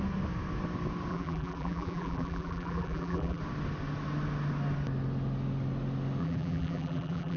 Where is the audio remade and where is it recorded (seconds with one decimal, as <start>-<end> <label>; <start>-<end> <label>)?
0.0-1.1 recorded; 1.1-3.4 remade; 3.4-6.2 recorded; 6.2-7.4 remade